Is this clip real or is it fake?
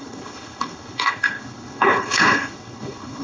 fake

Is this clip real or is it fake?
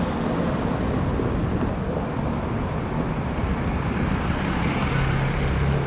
real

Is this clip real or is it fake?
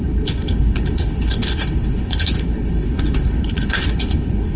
fake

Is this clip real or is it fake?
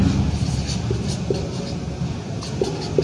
real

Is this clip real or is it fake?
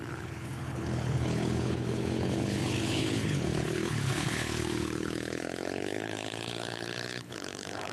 fake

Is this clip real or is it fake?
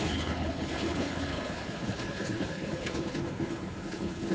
fake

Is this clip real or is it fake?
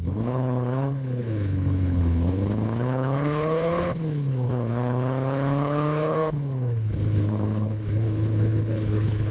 fake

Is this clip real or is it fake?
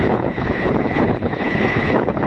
fake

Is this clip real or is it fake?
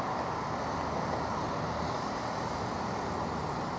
real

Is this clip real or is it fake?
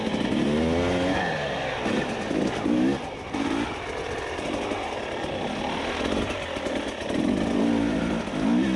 real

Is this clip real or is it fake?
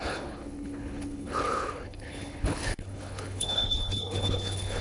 fake